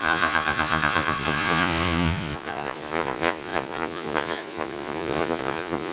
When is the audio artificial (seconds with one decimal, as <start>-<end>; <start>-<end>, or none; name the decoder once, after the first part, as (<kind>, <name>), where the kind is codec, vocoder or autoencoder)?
0.0-5.9 (vocoder, Vocos)

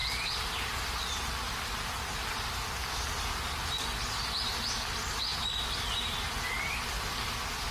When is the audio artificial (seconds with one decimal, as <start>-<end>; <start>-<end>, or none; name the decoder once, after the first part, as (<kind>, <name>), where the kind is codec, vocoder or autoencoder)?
none